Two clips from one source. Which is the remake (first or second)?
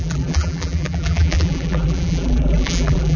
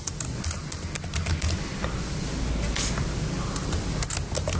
first